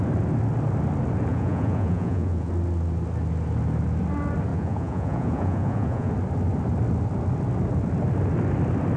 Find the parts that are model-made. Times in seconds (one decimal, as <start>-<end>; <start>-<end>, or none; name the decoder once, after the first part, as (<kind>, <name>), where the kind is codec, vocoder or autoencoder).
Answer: 1.3-2.5 (vocoder, Vocos); 4.5-6.1